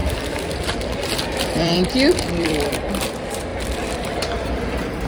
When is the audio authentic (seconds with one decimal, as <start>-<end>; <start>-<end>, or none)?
2.9-5.1